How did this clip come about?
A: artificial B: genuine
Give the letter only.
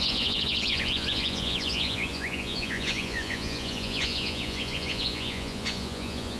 A